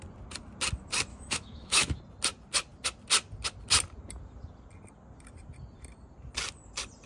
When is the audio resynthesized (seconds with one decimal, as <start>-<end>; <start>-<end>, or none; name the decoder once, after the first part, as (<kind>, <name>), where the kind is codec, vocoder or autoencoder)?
1.1-2.0 (autoencoder, DAC-VAE)